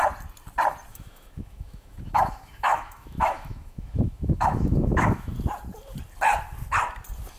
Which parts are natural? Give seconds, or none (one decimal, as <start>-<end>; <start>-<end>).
0.0-0.9; 5.3-7.4